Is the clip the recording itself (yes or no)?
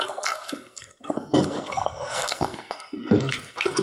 no